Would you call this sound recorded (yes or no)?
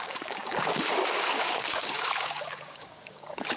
no